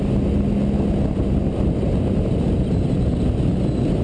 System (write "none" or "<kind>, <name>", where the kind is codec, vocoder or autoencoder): none